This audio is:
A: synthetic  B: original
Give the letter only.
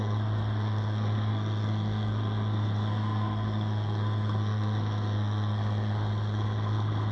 A